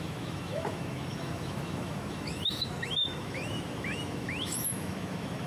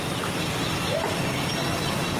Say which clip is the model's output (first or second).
first